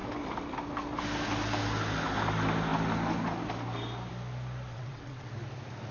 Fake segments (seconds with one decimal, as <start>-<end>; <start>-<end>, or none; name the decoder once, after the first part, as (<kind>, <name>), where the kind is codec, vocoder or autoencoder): 4.7-5.3 (vocoder, WaveNeXt)